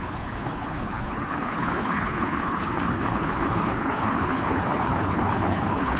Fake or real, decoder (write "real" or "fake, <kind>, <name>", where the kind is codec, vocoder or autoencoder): fake, codec, HILCodec